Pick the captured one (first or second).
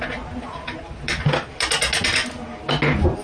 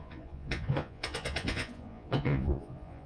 first